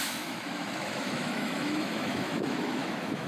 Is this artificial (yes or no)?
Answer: yes